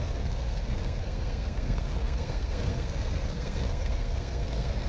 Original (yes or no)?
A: no